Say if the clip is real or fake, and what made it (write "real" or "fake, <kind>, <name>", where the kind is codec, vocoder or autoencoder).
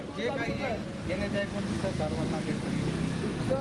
real